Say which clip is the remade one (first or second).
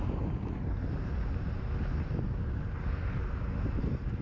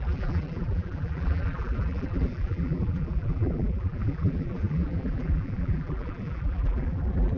second